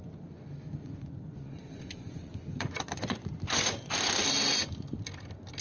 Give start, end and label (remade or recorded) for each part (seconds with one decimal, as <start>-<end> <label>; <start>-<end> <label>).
0.0-0.8 recorded; 0.8-3.9 remade; 3.9-5.6 recorded